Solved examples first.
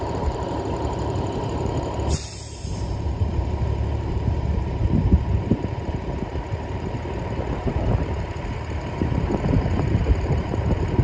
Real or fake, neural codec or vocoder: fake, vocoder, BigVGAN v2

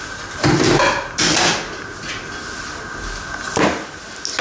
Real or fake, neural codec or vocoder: real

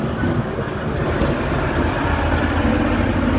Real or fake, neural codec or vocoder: real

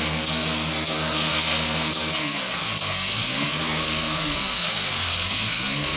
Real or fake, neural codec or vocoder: fake, codec, SNAC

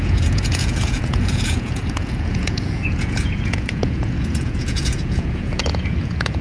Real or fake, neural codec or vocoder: fake, vocoder, Vocos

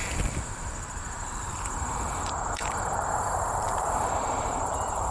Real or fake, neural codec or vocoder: fake, vocoder, BigVGAN v2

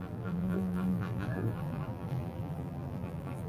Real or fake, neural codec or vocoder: fake, vocoder, BigVGAN v2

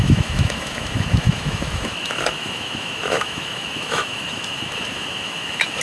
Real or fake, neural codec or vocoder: fake, autoencoder, DAC-VAE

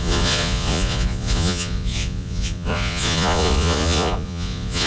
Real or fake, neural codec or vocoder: fake, vocoder, Vocos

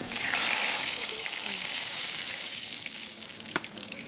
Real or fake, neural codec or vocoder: fake, codec, DAC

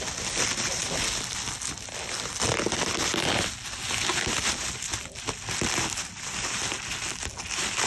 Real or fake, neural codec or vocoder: real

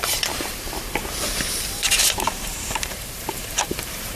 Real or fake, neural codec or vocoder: fake, vocoder, BigVGAN v2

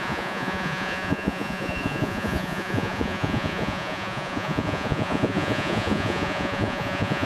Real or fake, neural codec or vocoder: fake, vocoder, Vocos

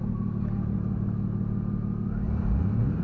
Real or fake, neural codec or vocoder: real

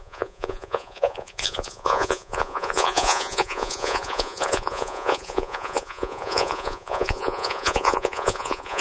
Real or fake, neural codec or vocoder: fake, vocoder, Vocos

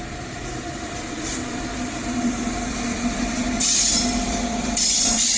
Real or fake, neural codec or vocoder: fake, vocoder, BigVGAN v2